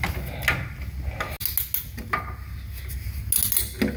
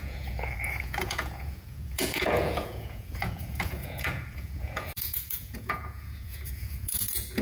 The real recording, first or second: first